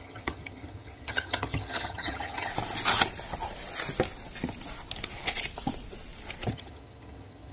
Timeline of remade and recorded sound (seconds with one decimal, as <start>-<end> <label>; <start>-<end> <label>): 0.0-2.5 remade; 2.5-6.5 recorded; 6.5-7.5 remade